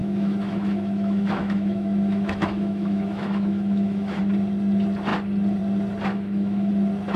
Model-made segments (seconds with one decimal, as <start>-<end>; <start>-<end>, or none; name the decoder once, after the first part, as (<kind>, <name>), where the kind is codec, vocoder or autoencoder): 0.0-4.2 (autoencoder, DAC-VAE); 6.1-6.7